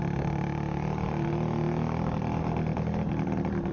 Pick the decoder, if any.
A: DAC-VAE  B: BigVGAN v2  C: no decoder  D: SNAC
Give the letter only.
C